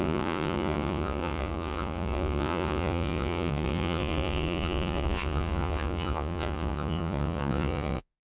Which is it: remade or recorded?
remade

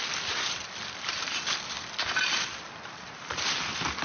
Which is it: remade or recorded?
remade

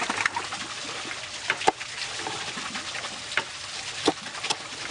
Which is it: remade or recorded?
recorded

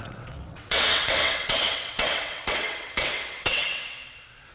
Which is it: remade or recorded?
remade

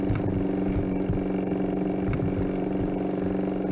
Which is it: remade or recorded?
recorded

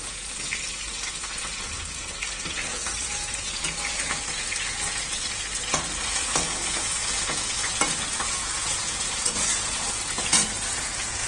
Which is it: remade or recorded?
remade